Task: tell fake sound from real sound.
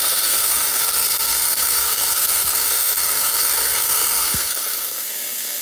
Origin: fake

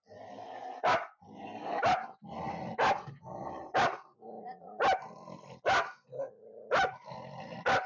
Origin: real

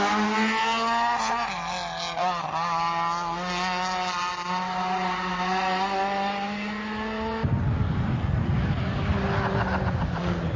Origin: real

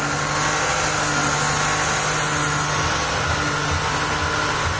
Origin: real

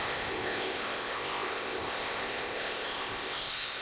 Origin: fake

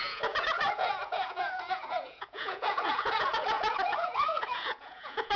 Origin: fake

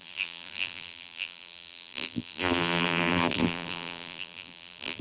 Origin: fake